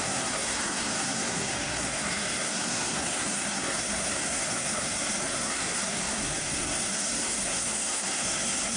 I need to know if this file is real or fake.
fake